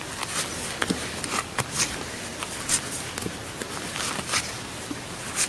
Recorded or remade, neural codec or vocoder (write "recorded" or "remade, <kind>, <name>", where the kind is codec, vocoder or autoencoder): recorded